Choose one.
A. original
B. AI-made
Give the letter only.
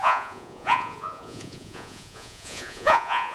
B